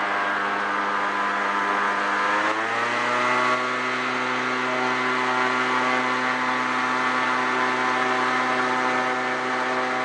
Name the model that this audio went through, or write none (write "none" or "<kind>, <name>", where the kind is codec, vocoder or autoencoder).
none